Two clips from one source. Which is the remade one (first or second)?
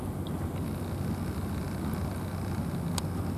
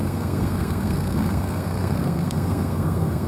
second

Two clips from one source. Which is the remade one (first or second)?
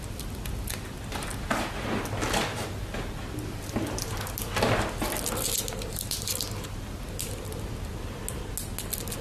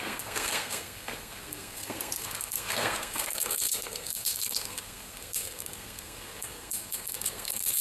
second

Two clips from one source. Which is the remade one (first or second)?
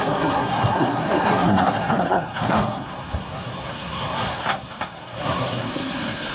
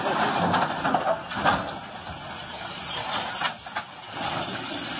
first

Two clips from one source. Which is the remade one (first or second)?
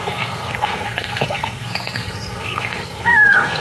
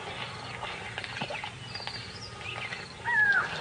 first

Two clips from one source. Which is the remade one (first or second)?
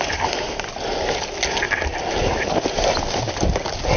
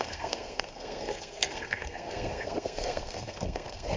second